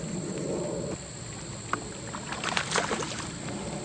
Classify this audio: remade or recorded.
recorded